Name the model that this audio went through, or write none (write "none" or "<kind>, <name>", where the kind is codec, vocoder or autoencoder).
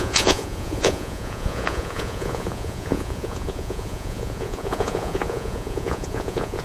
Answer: vocoder, Vocos